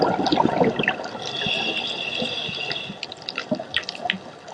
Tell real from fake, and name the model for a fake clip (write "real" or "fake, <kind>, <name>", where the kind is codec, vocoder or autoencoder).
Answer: real